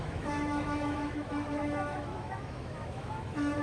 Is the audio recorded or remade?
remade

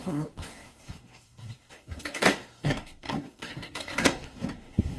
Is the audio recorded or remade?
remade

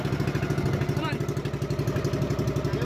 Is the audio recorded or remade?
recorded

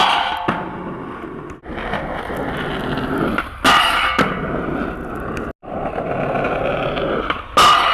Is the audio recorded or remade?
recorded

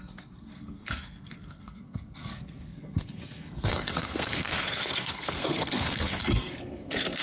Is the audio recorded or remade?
remade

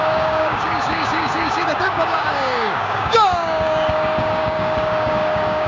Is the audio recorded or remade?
remade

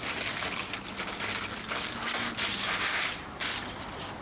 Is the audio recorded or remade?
recorded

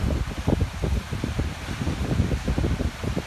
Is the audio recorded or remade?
recorded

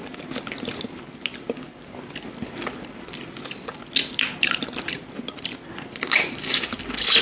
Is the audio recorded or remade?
recorded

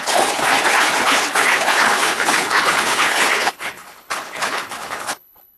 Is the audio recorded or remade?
remade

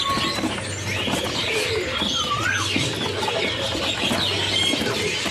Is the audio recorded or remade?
recorded